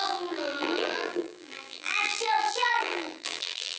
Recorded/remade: remade